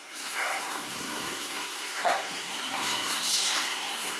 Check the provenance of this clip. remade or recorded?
remade